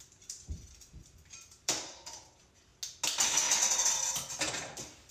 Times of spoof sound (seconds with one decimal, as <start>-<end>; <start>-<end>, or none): 0.0-2.7; 4.5-5.1